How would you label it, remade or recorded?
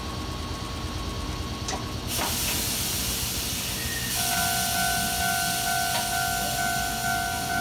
recorded